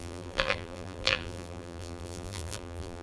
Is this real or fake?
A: fake